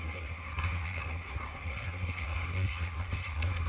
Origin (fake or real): fake